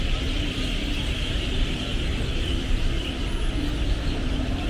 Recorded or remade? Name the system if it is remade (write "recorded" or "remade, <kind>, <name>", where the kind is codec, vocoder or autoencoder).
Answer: remade, vocoder, BigVGAN v2